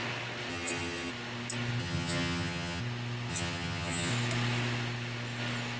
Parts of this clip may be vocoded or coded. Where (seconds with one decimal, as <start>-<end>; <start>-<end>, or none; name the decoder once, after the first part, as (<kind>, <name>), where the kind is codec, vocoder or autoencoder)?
0.5-1.1 (vocoder, HiFi-GAN); 1.8-2.8; 3.3-4.1